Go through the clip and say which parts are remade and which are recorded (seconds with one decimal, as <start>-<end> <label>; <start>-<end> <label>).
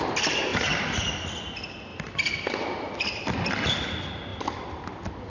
0.0-0.5 recorded; 0.5-1.0 remade; 1.0-1.9 recorded; 1.9-3.7 remade; 3.7-4.3 recorded; 4.3-5.3 remade